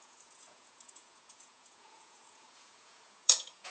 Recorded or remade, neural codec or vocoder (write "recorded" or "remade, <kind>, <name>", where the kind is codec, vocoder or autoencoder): remade, vocoder, Vocos